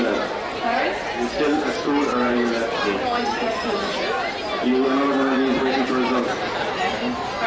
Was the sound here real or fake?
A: real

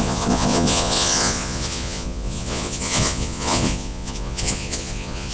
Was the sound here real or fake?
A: fake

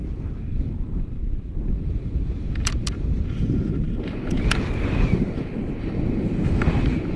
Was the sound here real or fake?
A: fake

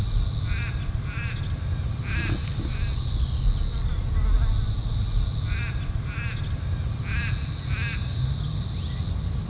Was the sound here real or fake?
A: real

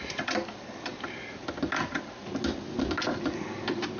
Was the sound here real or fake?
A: real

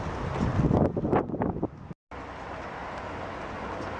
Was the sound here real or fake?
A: real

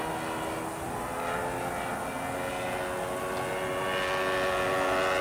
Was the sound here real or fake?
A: real